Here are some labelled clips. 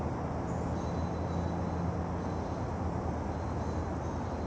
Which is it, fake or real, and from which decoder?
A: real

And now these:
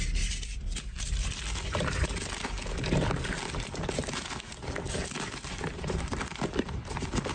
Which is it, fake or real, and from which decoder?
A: real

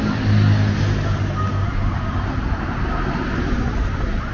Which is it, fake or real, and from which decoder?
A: real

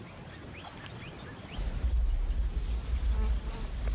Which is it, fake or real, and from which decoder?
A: real